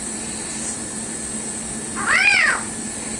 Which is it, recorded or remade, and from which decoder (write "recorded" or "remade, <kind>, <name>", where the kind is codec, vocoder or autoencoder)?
recorded